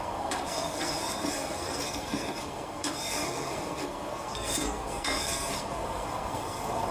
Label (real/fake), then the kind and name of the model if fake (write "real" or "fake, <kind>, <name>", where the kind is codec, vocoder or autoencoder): fake, codec, SNAC